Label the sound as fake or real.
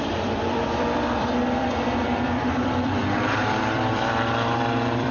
fake